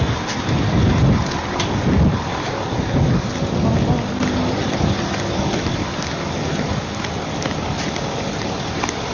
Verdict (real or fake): real